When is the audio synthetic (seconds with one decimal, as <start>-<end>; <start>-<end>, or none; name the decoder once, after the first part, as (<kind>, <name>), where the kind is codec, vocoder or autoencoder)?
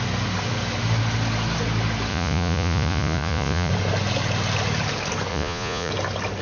2.1-3.7 (vocoder, Vocos); 5.3-5.9